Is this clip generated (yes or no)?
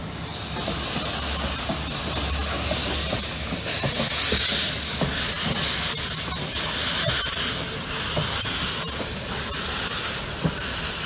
no